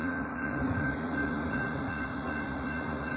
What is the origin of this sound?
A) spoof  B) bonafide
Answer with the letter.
A